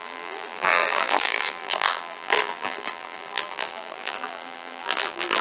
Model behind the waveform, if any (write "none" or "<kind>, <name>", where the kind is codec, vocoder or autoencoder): vocoder, BigVGAN v2